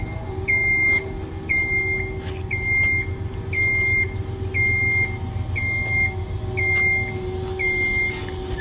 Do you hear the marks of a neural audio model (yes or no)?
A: no